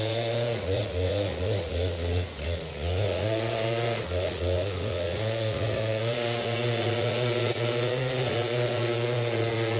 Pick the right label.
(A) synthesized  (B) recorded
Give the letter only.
A